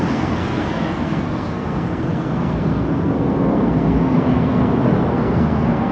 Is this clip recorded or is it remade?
remade